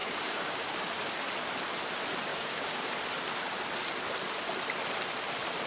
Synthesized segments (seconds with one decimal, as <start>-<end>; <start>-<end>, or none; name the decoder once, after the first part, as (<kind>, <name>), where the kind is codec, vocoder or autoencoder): 0.0-0.6 (codec, DAC); 2.3-2.9